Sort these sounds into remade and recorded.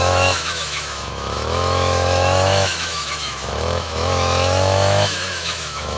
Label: remade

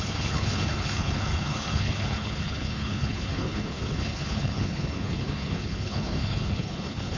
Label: remade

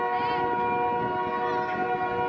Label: recorded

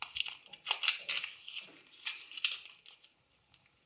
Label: recorded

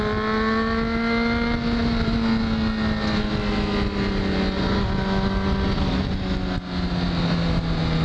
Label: recorded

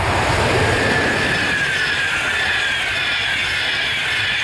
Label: recorded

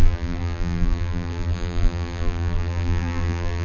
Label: remade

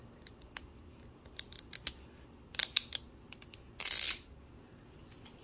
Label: recorded